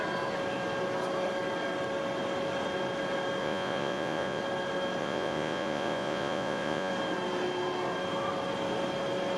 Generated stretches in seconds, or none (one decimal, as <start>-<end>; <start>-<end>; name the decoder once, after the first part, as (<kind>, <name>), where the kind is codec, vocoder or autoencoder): 3.4-4.4 (vocoder, Vocos); 5.0-6.9